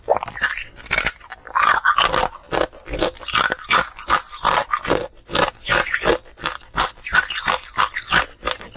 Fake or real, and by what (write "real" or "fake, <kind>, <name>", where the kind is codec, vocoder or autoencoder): real